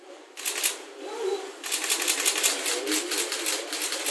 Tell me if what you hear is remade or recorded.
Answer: recorded